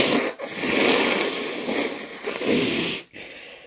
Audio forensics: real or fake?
real